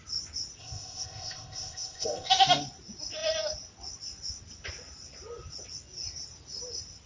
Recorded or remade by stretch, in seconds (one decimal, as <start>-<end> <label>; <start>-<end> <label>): 0.0-0.6 recorded; 0.6-2.3 remade; 2.3-7.1 recorded